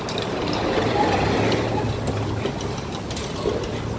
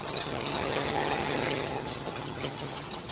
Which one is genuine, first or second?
first